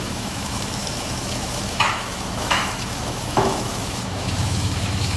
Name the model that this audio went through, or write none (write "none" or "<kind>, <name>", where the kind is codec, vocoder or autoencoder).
autoencoder, DAC-VAE